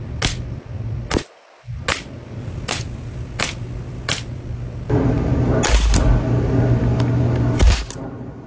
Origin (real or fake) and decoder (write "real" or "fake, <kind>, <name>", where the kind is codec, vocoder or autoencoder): real